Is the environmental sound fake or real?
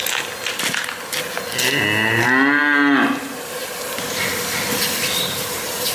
real